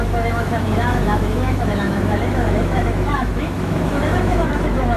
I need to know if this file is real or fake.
fake